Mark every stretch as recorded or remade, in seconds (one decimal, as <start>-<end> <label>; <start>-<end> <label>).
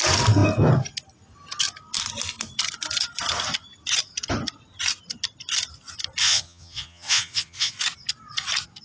0.0-6.2 recorded; 6.2-7.7 remade; 7.7-8.8 recorded